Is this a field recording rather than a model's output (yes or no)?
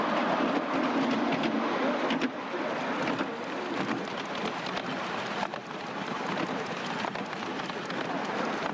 yes